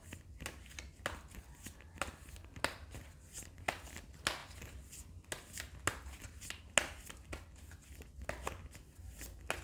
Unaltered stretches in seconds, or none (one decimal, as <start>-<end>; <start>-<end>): 0.0-9.6